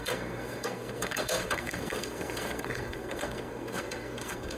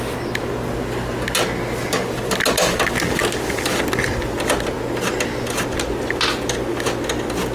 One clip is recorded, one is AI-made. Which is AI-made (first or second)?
first